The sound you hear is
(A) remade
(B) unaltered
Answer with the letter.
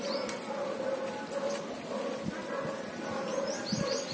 B